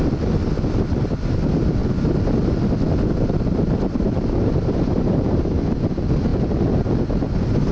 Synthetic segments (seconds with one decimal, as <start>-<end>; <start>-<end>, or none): 3.5-5.7